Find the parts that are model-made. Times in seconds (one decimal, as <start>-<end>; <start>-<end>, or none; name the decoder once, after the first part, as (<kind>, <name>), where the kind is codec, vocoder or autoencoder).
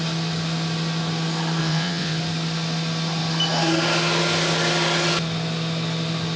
1.6-2.2 (vocoder, WaveNeXt)